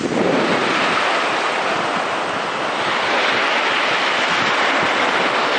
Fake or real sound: real